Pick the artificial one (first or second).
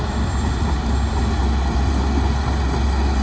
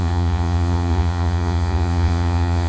second